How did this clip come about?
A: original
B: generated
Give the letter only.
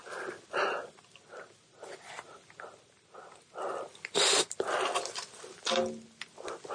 A